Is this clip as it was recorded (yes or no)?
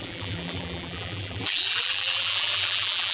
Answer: no